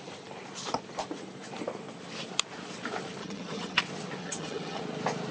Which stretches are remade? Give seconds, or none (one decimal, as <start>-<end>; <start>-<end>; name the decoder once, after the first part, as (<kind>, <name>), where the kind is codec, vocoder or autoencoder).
3.2-3.8 (vocoder, HiFi-GAN); 4.2-4.8